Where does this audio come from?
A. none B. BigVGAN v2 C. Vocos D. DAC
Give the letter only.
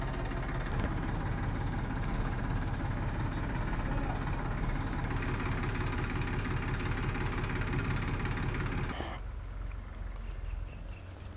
A